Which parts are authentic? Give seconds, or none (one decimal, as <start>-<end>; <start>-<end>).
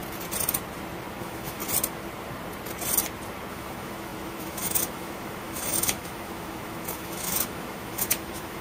0.0-1.2; 1.6-3.5